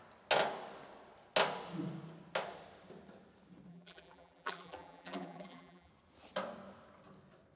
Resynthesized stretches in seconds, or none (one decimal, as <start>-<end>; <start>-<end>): 3.7-5.9